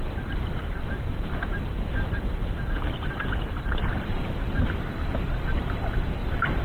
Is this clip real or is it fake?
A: fake